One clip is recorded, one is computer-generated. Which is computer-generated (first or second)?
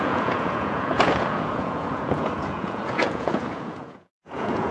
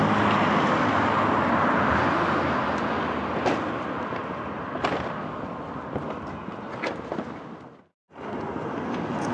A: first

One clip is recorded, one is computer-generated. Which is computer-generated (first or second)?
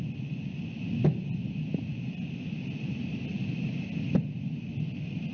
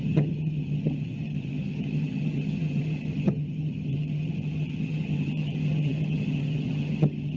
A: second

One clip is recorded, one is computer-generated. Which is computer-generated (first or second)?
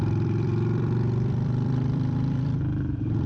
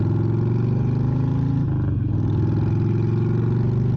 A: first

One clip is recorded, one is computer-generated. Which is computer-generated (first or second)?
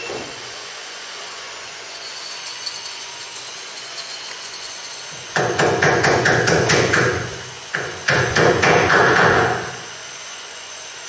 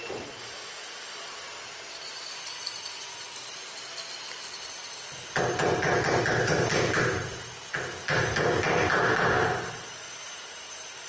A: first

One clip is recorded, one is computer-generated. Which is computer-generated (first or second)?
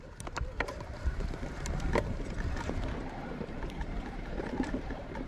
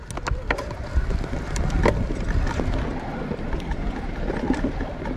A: first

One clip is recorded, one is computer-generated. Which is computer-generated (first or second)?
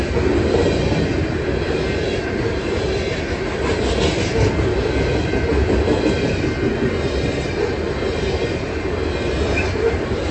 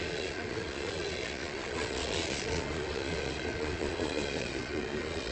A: second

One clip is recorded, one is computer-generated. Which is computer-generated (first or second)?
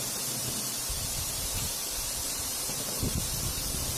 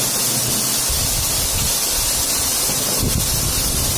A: first